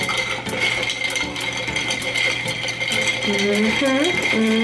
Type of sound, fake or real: real